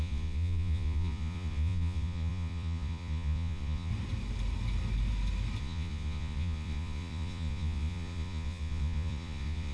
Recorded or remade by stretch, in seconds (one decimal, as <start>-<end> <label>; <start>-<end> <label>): 0.0-3.9 remade; 3.9-5.6 recorded; 5.6-9.7 remade